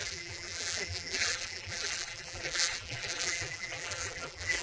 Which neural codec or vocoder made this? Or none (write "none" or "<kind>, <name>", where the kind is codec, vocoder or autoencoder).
vocoder, BigVGAN v2